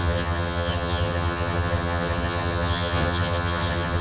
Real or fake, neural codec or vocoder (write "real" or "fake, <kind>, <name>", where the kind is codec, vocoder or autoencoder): fake, vocoder, HiFi-GAN